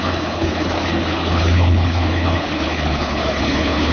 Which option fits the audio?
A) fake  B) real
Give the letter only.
A